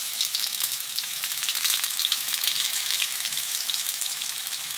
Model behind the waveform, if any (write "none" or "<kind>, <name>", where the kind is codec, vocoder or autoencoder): autoencoder, DAC-VAE